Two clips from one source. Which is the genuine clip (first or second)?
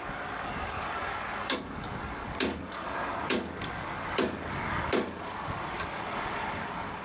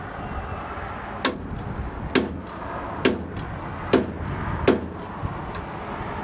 second